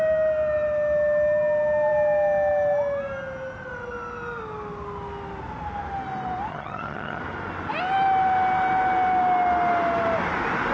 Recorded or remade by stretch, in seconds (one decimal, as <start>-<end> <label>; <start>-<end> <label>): 0.0-6.5 recorded; 6.5-7.2 remade; 7.2-10.7 recorded